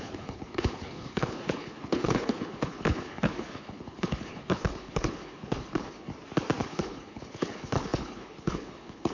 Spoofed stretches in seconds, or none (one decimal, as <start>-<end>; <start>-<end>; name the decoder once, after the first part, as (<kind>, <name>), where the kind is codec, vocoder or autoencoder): 0.0-6.1 (codec, HILCodec); 6.6-9.1